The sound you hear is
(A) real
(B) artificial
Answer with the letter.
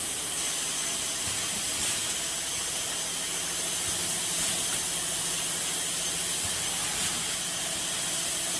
A